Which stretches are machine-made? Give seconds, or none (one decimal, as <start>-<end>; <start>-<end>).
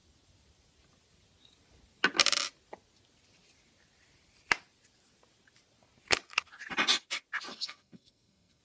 7.5-8.6